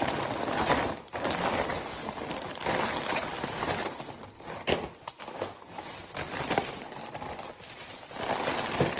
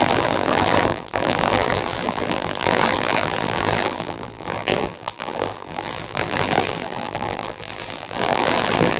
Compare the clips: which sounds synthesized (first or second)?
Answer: second